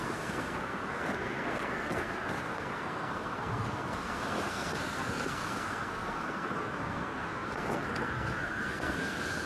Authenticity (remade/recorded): remade